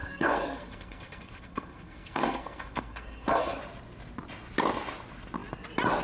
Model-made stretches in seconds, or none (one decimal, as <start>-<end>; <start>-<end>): 0.0-3.6